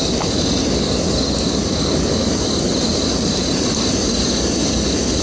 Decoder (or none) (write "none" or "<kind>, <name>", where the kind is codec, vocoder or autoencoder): none